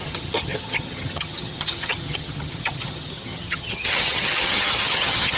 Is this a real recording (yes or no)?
no